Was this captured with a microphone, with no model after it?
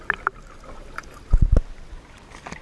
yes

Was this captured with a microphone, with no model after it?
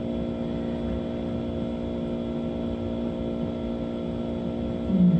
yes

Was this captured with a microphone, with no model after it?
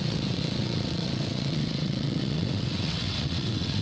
no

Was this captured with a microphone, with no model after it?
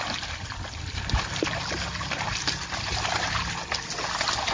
yes